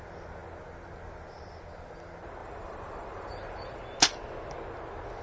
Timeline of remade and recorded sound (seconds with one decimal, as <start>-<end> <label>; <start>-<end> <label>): 0.0-2.4 recorded; 2.4-3.8 remade; 3.8-5.2 recorded